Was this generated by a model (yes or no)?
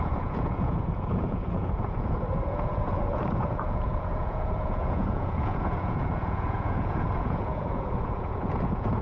yes